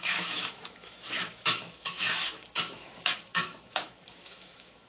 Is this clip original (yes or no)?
no